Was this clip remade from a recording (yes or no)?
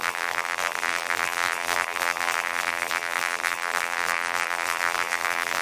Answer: yes